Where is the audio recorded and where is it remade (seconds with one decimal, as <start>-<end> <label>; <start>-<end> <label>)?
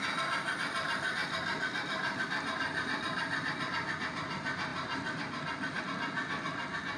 0.0-1.2 recorded; 1.2-3.7 remade; 3.7-4.7 recorded; 4.7-5.8 remade; 5.8-7.0 recorded